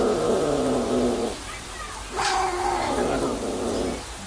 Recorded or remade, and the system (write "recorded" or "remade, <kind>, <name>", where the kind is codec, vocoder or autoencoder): recorded